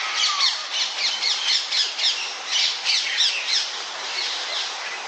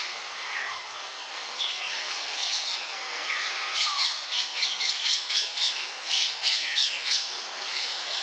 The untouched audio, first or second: first